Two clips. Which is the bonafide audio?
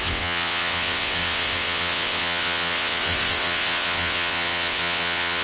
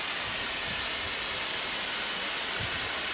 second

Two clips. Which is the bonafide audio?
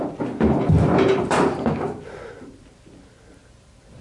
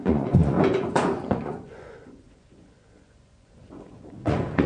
first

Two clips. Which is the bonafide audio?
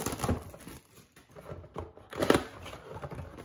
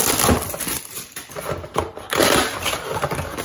first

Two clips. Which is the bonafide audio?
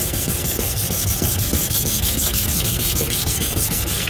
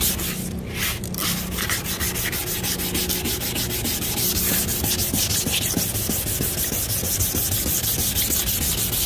second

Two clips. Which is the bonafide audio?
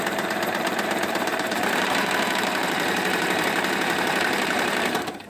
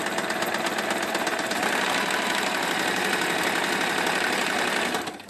second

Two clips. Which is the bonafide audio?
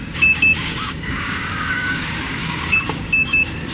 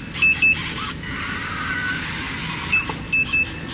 second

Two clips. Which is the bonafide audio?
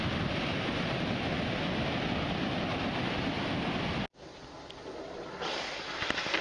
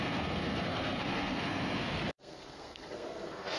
first